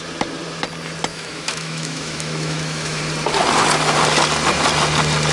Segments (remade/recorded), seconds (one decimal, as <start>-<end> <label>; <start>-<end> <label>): 0.0-1.1 recorded; 1.1-3.0 remade; 3.0-5.3 recorded